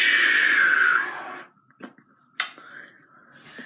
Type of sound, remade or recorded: recorded